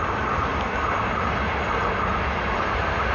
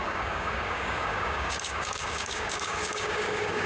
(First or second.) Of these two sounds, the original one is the first